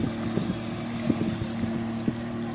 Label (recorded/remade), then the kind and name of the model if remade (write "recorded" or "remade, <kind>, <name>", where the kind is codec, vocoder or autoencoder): recorded